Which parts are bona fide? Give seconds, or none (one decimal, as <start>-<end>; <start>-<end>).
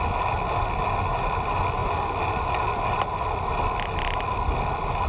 0.0-5.1